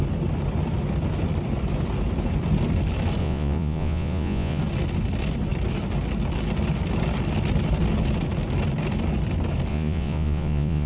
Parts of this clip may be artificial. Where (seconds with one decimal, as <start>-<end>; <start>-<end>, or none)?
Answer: 3.2-4.6; 9.7-10.9